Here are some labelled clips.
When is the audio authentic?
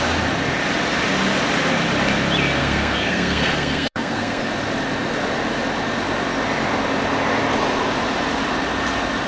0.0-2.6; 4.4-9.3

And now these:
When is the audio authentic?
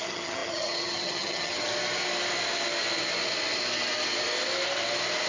1.7-5.3